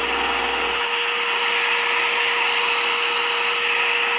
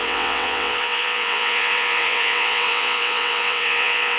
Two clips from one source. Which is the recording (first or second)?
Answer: first